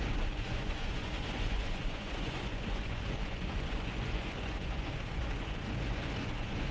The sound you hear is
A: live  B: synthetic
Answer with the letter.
B